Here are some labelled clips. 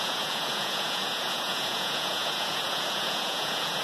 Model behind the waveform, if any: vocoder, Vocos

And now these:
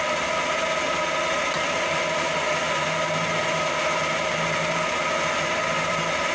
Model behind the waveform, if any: none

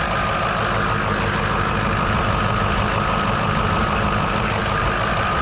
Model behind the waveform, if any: none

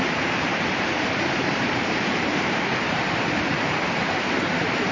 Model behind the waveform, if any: vocoder, BigVGAN v2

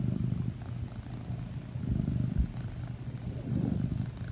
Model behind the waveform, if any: none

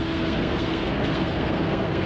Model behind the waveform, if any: codec, SNAC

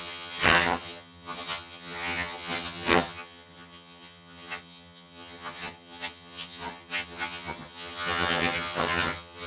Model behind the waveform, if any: vocoder, HiFi-GAN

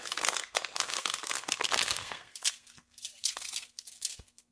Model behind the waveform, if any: codec, SNAC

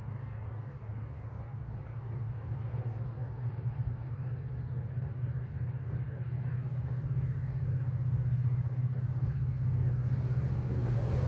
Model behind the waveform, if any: codec, DAC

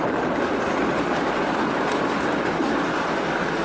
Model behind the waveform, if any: none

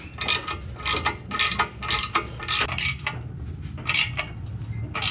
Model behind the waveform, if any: none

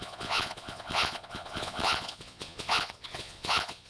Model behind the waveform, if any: vocoder, Vocos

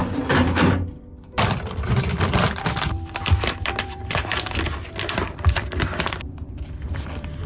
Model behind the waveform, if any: vocoder, BigVGAN v2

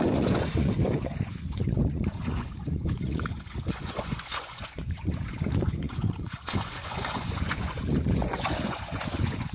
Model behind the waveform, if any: vocoder, Vocos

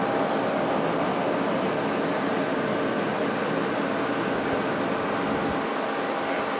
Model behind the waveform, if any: none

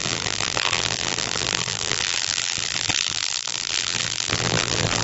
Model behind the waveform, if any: vocoder, BigVGAN v2